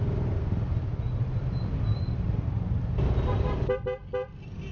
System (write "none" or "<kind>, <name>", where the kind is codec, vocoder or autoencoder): none